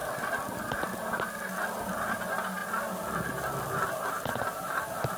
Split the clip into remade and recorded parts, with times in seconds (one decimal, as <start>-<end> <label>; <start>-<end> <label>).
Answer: 0.0-5.2 recorded